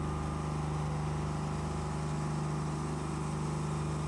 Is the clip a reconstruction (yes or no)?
no